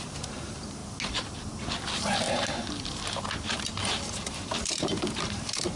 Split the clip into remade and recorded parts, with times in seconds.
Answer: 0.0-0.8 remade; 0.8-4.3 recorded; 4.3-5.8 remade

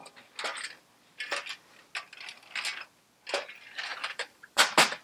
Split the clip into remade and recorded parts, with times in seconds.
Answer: 0.0-3.9 recorded; 3.9-4.6 remade; 4.6-5.0 recorded

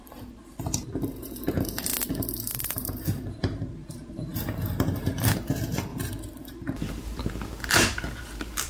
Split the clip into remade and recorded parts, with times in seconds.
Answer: 0.0-1.9 remade; 1.9-2.4 recorded; 2.4-8.7 remade

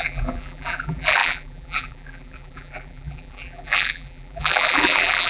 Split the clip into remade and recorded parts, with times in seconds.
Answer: 0.0-5.3 remade

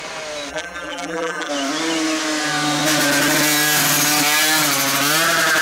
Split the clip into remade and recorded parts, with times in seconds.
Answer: 0.0-0.5 recorded; 0.5-1.5 remade; 1.5-5.6 recorded

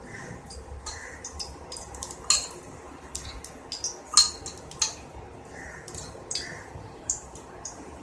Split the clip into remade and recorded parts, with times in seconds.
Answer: 0.0-2.9 remade; 2.9-5.1 recorded; 5.1-8.0 remade

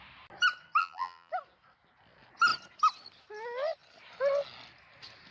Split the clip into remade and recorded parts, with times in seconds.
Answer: 0.0-0.8 recorded; 0.8-1.3 remade; 1.3-5.3 recorded